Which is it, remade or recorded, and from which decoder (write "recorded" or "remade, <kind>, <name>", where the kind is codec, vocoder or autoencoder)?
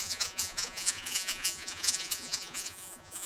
remade, vocoder, Vocos